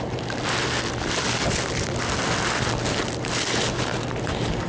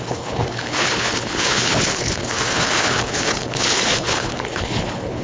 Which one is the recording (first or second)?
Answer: first